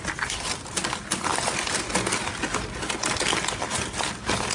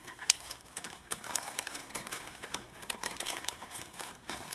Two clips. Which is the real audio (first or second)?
first